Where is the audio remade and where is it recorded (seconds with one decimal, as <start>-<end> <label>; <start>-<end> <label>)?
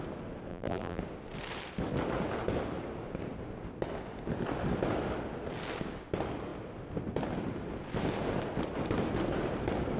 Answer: 0.0-0.5 recorded; 0.5-1.0 remade; 1.0-10.0 recorded